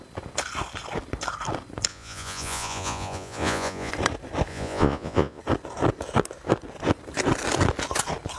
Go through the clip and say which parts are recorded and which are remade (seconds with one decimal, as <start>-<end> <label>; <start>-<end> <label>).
0.0-1.9 recorded; 1.9-3.9 remade; 3.9-4.5 recorded; 4.5-5.4 remade; 5.4-8.4 recorded

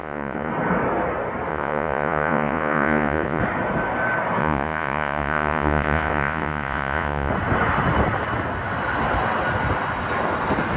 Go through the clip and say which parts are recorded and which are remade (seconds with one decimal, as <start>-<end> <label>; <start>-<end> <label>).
0.0-0.5 remade; 0.5-1.5 recorded; 1.5-3.4 remade; 3.4-4.4 recorded; 4.4-7.3 remade; 7.3-10.8 recorded

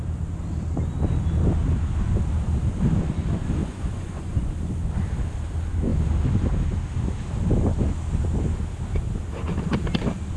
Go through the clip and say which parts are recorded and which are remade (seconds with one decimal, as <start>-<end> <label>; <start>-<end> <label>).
0.0-3.6 recorded; 3.6-4.5 remade; 4.5-10.4 recorded

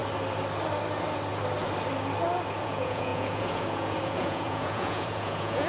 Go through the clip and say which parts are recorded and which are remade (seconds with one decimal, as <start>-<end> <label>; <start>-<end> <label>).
0.0-2.6 recorded; 2.6-5.7 remade